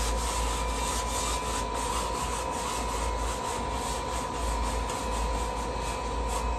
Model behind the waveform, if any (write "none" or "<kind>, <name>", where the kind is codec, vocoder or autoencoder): none